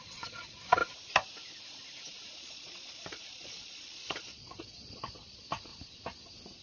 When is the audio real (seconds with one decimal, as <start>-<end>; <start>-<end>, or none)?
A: 0.8-2.4; 5.7-6.6